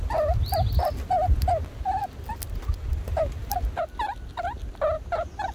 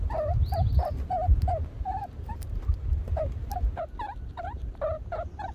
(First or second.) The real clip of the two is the first